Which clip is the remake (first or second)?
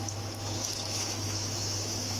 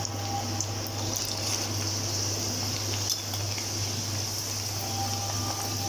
first